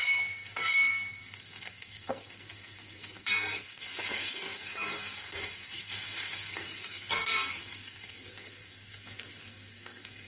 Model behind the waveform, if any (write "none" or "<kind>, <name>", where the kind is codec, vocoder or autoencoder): codec, SNAC